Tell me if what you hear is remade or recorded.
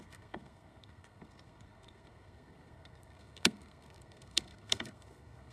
remade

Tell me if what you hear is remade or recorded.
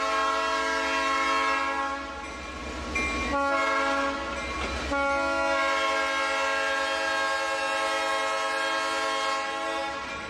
recorded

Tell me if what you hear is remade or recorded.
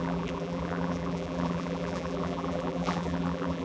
remade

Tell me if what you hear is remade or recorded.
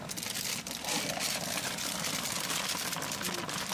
recorded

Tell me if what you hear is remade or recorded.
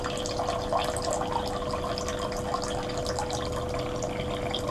recorded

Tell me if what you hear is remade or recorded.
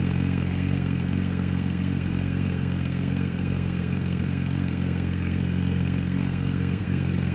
remade